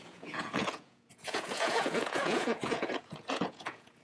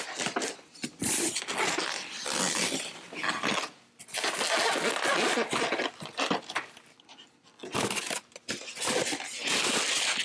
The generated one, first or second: first